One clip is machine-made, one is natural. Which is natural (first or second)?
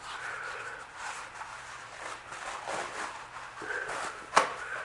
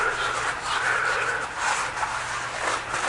second